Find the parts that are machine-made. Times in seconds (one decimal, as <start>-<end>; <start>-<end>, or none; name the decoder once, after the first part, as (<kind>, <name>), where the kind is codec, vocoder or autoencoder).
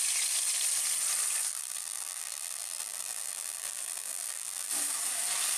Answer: 1.5-4.7 (vocoder, BigVGAN v2)